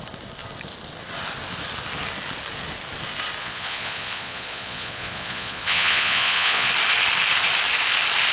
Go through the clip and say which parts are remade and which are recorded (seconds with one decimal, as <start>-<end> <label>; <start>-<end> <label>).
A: 0.0-3.4 recorded; 3.4-6.7 remade; 6.7-8.3 recorded